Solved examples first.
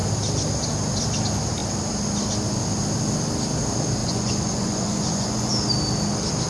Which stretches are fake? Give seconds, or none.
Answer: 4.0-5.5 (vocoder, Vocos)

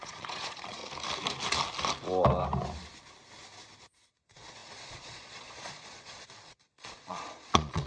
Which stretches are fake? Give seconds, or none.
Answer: 0.0-0.8 (vocoder, Vocos); 4.1-7.9

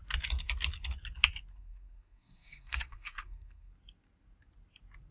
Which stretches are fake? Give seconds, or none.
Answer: 1.5-3.7 (codec, SNAC)

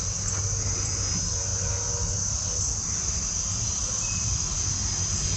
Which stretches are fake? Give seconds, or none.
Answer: none

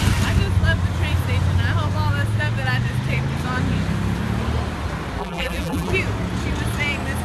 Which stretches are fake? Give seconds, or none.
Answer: 5.2-5.9 (vocoder, BigVGAN v2)

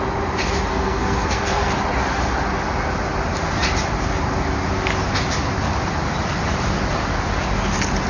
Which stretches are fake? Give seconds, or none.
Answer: 0.7-1.7 (codec, SNAC)

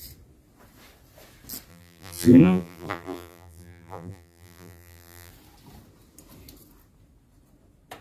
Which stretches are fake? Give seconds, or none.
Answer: 1.7-5.3 (vocoder, BigVGAN v2)

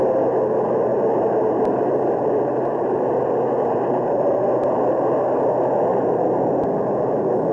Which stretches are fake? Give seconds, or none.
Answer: 0.9-4.4 (vocoder, BigVGAN v2); 5.9-6.5